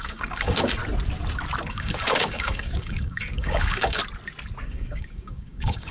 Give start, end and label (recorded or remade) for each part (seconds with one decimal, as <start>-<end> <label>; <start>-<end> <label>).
0.0-0.8 remade; 0.8-1.7 recorded; 1.7-4.0 remade; 4.0-4.7 recorded; 4.7-5.9 remade